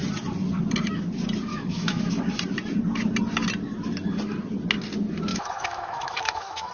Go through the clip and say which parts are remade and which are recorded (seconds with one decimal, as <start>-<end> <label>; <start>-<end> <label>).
0.0-1.5 recorded; 1.5-2.1 remade; 2.1-5.3 recorded; 5.3-6.7 remade

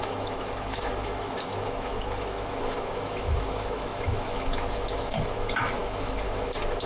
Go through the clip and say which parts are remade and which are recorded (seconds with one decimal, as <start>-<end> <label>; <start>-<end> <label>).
0.0-6.9 remade

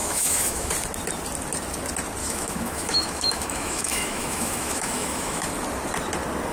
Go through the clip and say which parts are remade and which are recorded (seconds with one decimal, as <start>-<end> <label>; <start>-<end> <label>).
0.0-0.7 remade; 0.7-2.2 recorded; 2.2-5.5 remade; 5.5-6.5 recorded

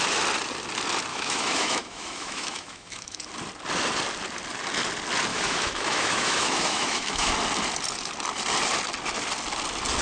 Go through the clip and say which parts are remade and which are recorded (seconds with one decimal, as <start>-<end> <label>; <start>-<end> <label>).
0.0-1.1 recorded; 1.1-3.3 remade; 3.3-5.3 recorded; 5.3-7.3 remade; 7.3-10.0 recorded